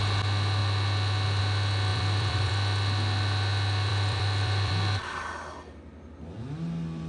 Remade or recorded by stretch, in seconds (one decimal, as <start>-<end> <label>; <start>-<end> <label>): 0.0-1.9 recorded; 1.9-2.5 remade; 2.5-3.9 recorded; 3.9-4.7 remade; 4.7-7.1 recorded